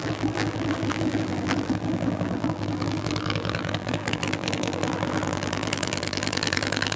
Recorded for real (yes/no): no